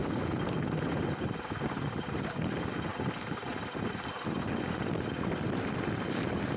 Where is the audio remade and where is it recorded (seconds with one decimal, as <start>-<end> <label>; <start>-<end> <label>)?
0.0-6.6 recorded